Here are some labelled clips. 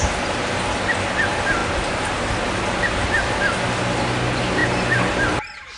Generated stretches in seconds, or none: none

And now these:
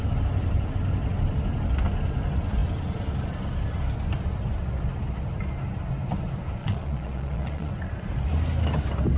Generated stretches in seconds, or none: 6.6-7.7 (vocoder, Vocos)